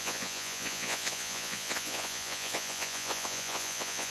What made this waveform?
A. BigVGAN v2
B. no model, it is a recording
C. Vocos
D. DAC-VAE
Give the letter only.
C